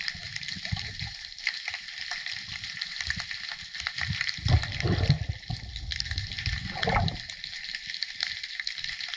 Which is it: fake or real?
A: real